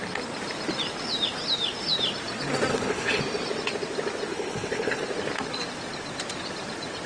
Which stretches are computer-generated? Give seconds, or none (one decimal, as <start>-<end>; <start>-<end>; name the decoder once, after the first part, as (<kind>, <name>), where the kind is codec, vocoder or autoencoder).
2.7-3.2 (codec, HILCodec); 4.3-5.0